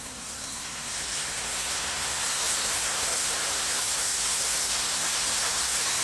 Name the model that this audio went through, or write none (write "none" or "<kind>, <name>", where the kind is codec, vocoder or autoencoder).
codec, SNAC